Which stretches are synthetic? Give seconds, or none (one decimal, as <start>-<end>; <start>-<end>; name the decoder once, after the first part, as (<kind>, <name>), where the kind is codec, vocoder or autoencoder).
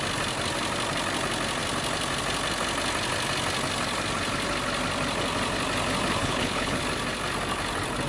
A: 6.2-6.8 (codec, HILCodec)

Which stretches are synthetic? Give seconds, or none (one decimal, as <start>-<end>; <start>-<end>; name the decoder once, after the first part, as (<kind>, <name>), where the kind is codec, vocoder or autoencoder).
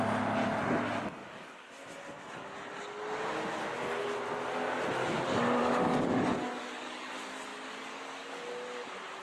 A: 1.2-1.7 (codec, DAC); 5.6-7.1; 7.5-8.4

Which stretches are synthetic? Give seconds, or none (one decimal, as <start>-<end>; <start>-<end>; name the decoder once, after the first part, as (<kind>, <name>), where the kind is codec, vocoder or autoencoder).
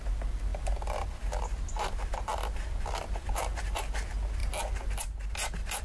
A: none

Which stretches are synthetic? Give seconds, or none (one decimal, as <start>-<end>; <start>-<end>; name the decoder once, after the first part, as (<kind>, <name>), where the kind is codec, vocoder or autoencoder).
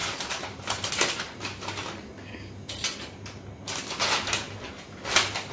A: 0.0-0.9 (vocoder, BigVGAN v2)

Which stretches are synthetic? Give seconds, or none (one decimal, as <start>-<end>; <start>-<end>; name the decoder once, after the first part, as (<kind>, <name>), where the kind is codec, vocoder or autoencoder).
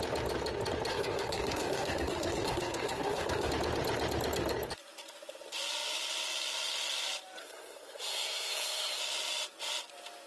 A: 0.9-3.5 (codec, SNAC); 7.4-9.0